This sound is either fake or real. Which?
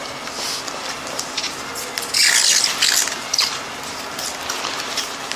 real